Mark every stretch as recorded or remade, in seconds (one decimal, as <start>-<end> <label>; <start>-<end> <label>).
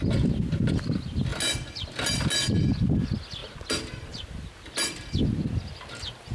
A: 0.0-6.3 recorded